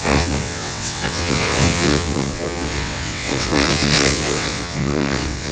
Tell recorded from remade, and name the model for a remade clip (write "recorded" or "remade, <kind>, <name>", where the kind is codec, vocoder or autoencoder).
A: remade, vocoder, WaveNeXt